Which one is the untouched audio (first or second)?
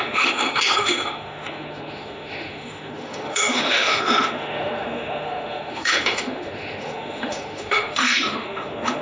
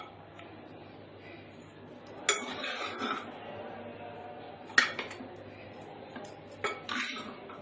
second